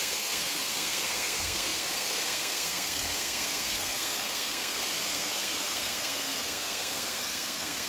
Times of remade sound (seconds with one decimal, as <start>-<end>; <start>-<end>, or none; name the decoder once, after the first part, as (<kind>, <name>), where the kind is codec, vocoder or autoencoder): 0.0-7.9 (codec, SNAC)